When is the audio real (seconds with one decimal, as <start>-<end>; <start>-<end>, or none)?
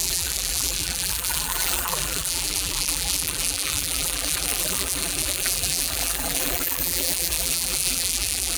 none